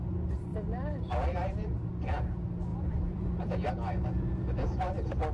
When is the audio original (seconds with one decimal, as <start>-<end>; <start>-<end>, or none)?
0.0-0.5; 1.9-2.7; 4.3-5.3